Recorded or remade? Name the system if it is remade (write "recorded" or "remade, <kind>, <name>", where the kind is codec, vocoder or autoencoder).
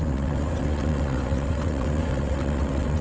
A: remade, vocoder, WaveNeXt